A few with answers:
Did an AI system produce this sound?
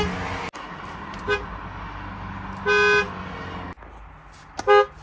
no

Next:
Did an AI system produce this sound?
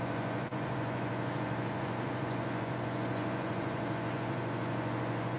yes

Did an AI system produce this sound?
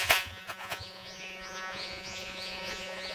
yes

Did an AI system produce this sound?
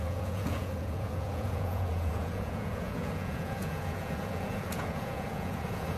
yes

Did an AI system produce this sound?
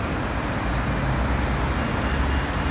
no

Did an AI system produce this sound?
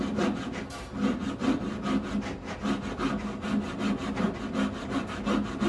no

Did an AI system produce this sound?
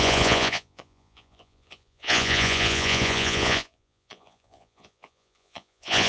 yes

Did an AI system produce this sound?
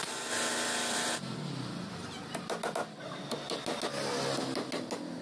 no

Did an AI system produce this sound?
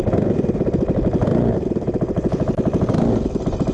no